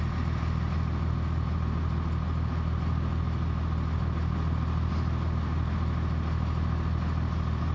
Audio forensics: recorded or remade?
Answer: recorded